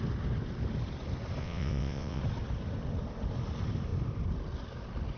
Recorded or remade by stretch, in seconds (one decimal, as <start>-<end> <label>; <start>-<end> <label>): 0.0-1.4 recorded; 1.4-2.2 remade; 2.2-5.2 recorded